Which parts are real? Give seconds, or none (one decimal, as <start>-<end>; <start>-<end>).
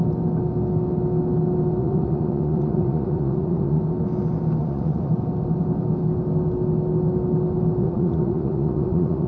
0.0-1.8; 3.8-4.6; 5.1-7.8